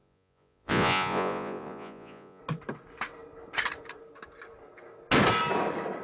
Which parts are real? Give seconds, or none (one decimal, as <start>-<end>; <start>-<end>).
2.4-6.0